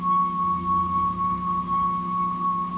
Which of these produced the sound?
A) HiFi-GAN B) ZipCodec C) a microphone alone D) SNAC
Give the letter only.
C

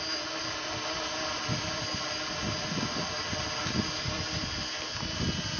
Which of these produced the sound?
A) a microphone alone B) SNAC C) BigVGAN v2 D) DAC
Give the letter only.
A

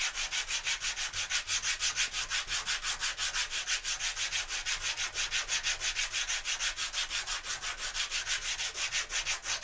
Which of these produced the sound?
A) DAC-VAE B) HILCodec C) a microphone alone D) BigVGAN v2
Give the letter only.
C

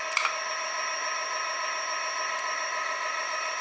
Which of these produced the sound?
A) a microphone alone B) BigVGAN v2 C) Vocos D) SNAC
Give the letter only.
A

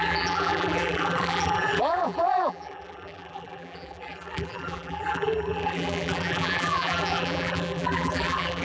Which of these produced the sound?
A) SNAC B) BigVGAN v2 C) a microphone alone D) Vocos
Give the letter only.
B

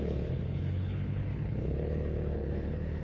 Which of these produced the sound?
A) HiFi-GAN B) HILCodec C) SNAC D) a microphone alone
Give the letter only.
B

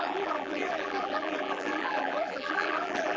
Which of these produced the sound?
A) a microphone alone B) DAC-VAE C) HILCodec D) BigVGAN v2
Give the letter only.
D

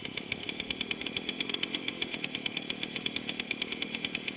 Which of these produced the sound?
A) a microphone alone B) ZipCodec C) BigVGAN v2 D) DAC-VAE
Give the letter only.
D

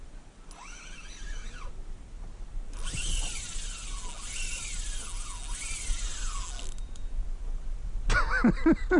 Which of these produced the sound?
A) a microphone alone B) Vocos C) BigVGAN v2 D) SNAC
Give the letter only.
A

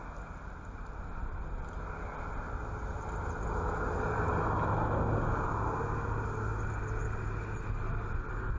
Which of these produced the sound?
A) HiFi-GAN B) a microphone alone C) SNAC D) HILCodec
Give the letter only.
B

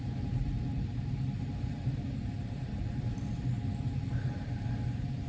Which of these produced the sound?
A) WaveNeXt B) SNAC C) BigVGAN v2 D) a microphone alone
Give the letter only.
C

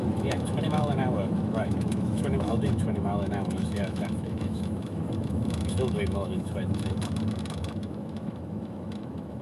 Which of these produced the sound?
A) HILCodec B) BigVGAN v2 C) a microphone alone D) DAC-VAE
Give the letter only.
D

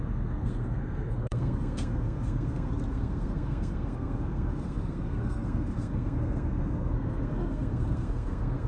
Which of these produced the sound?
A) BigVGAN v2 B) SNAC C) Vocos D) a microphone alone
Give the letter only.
B